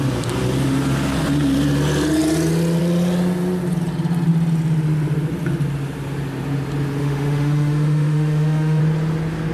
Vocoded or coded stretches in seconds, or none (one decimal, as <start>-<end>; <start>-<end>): 7.0-8.8